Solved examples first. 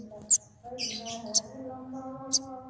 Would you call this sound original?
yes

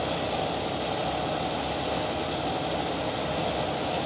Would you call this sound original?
yes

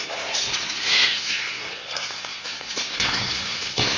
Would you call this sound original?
no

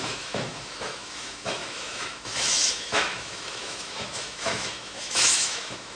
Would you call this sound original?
no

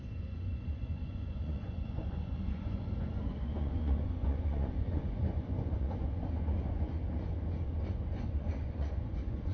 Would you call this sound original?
no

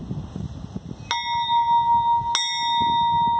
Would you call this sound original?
yes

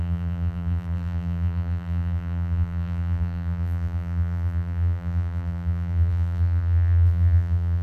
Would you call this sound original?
no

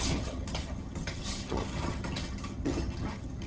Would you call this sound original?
no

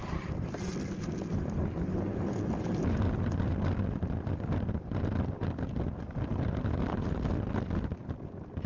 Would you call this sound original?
yes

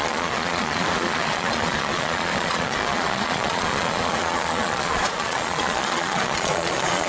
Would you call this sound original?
no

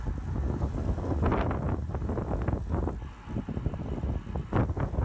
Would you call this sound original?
yes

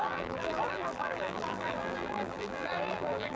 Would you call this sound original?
no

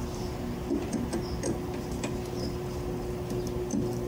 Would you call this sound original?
yes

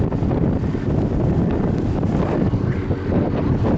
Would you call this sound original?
yes